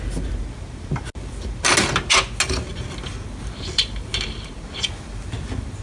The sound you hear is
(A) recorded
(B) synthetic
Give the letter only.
A